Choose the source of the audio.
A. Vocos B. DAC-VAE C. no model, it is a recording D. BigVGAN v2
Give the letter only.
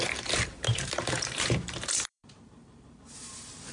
D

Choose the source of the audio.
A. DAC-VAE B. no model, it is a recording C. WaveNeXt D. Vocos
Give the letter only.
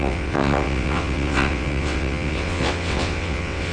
C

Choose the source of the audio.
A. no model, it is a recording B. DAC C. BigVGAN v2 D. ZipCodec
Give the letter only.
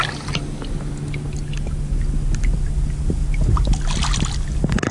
A